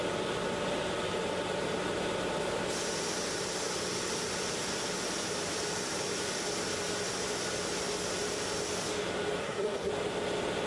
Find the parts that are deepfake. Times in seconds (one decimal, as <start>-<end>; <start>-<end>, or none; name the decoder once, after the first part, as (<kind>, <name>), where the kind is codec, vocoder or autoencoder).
9.4-9.9 (codec, SNAC)